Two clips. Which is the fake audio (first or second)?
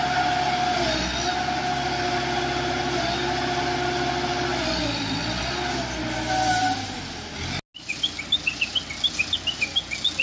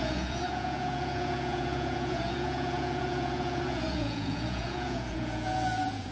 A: second